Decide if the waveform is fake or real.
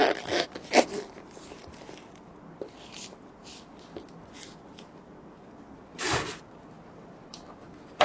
real